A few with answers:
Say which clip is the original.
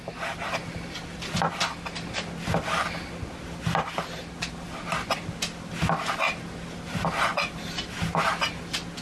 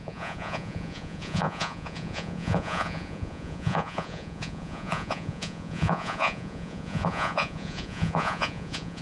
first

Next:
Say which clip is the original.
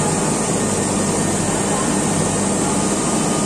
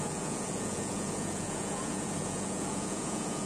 first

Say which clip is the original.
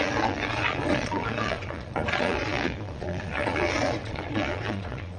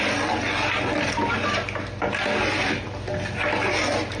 second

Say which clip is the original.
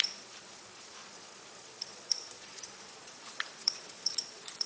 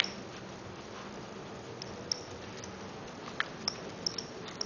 second